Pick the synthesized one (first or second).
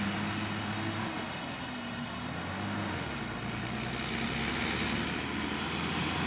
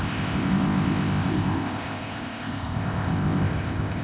second